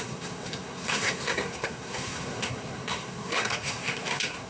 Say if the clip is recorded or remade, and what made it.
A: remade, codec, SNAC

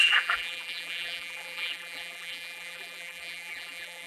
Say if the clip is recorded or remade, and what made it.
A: remade, vocoder, BigVGAN v2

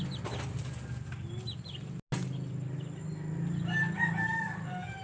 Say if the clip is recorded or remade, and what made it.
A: recorded